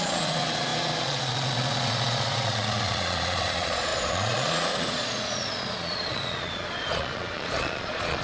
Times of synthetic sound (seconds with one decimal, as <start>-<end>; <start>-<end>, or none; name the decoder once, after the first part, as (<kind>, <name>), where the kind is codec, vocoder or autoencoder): 0.0-8.2 (vocoder, Vocos)